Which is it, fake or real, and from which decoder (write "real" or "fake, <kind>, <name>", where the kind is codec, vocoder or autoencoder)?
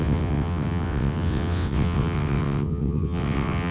fake, vocoder, WaveNeXt